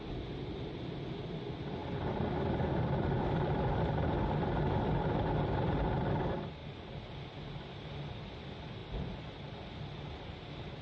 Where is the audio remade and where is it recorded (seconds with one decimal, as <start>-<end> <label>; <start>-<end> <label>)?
0.0-10.8 recorded